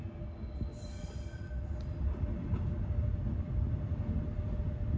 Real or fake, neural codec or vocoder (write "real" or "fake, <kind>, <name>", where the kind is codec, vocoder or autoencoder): real